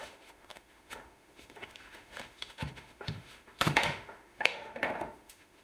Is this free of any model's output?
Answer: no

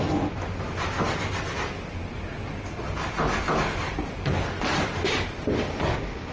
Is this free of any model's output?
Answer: yes